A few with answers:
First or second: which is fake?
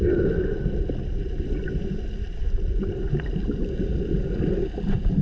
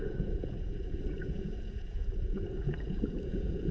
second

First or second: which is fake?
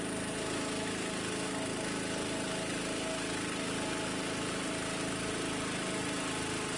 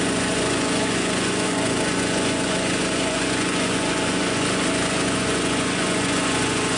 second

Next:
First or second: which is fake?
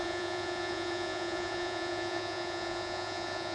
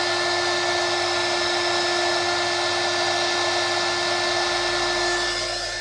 first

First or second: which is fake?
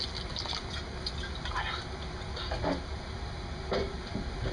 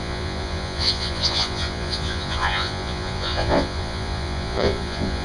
second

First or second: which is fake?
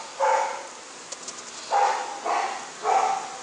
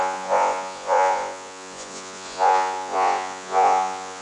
second